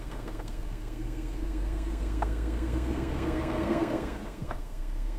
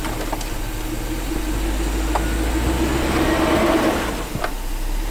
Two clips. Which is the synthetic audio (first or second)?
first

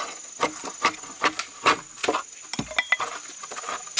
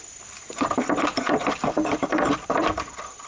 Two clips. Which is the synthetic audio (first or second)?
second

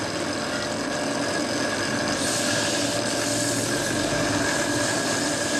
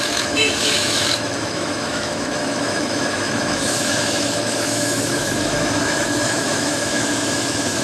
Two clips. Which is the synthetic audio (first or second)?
second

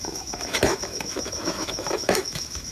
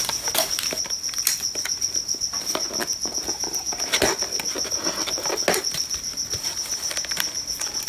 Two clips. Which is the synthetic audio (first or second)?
first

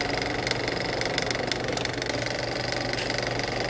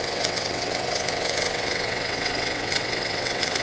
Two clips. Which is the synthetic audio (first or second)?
second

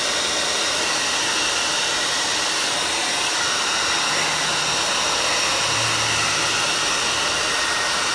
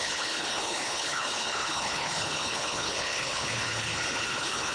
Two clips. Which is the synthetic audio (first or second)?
second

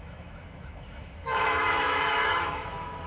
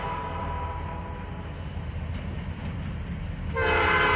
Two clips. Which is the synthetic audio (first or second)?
first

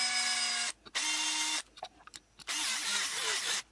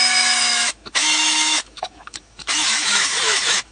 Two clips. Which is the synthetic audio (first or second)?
second